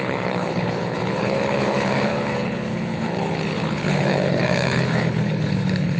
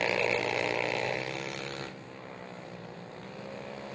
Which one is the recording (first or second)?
second